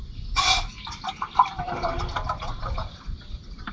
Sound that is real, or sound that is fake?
real